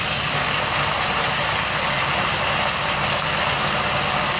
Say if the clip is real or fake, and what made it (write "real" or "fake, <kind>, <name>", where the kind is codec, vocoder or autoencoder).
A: real